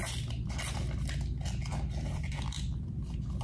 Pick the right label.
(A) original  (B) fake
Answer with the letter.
A